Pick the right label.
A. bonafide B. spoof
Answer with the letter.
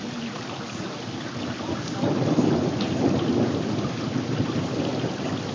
A